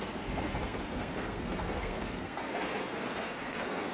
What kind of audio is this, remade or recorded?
remade